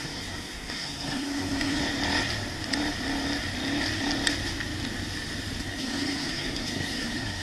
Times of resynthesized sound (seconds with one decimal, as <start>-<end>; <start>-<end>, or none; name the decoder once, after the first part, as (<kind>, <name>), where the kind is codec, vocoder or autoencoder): 0.0-1.8 (codec, SNAC); 5.6-7.4